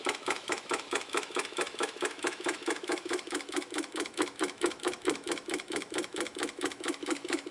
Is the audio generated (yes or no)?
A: yes